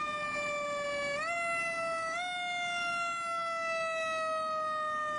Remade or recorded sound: recorded